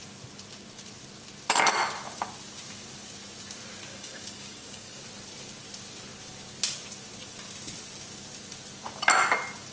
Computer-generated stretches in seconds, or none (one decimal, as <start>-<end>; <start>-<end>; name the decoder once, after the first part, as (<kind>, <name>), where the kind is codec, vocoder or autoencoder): 3.9-5.0 (codec, DAC)